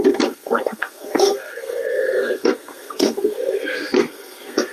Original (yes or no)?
no